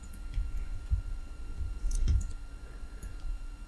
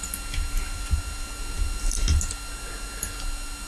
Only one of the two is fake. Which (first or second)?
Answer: first